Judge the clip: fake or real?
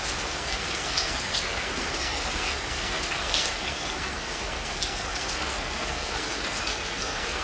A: fake